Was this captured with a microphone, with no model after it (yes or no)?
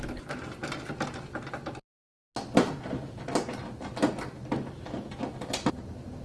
yes